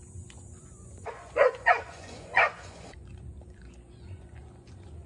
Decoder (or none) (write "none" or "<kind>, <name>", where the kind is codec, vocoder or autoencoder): vocoder, Vocos